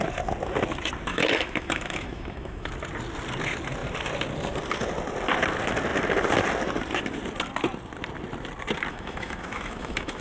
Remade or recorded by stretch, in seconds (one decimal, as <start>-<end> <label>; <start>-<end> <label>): 0.0-1.1 recorded; 1.1-2.7 remade; 2.7-8.9 recorded; 8.9-10.2 remade